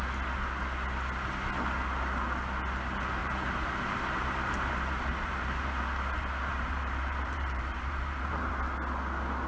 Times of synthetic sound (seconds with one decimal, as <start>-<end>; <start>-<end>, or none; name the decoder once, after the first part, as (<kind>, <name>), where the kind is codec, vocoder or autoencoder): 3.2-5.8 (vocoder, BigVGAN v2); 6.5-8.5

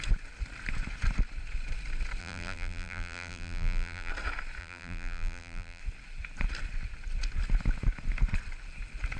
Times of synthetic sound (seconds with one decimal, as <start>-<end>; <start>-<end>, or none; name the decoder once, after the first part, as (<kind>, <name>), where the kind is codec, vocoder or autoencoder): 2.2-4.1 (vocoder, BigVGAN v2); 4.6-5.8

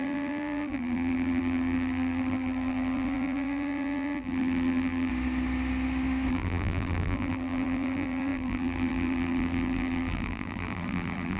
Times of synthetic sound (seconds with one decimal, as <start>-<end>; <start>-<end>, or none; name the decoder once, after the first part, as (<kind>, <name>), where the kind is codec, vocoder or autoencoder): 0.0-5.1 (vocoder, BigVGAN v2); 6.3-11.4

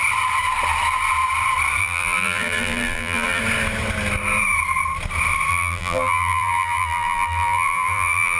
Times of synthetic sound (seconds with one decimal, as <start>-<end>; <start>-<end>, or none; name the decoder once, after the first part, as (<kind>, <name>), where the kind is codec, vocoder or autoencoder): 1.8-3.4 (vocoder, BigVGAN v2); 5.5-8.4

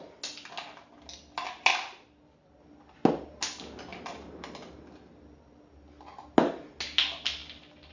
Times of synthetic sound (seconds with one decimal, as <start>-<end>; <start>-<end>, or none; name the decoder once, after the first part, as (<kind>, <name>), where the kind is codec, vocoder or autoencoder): 1.7-2.6 (vocoder, BigVGAN v2); 3.9-5.6; 7.4-7.9

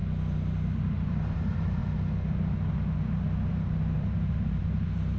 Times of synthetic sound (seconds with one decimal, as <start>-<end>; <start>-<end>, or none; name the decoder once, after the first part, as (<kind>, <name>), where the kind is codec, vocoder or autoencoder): 0.8-1.8 (vocoder, BigVGAN v2); 3.5-5.2

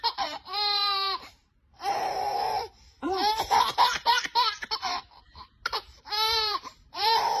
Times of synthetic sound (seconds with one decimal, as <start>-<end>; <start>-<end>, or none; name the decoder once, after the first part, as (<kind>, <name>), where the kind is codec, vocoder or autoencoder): 0.0-7.4 (vocoder, BigVGAN v2)

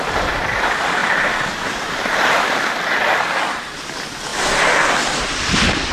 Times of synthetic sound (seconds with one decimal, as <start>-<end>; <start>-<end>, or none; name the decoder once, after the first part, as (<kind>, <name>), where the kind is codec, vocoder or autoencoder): 1.0-1.9 (vocoder, BigVGAN v2)